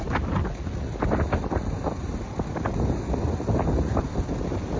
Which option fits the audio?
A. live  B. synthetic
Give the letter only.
A